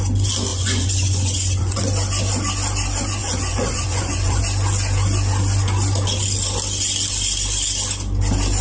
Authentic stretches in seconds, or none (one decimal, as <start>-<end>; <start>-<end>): 0.0-0.5; 1.8-3.2; 4.4-8.6